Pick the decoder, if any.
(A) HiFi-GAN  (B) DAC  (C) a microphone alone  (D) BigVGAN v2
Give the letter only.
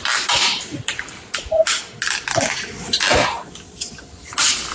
C